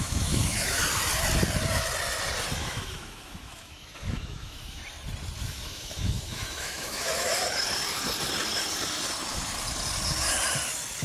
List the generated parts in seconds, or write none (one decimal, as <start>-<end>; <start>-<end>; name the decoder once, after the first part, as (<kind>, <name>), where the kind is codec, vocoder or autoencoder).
0.0-0.8 (autoencoder, DAC-VAE); 2.6-4.8; 5.4-7.3